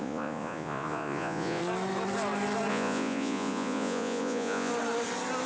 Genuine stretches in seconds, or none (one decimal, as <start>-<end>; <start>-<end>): 1.6-2.7; 4.7-5.5